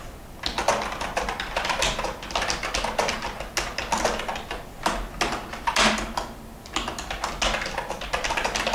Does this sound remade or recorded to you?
recorded